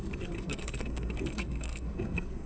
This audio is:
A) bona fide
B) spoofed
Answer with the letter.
B